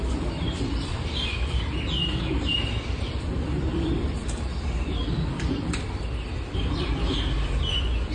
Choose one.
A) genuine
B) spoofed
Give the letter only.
B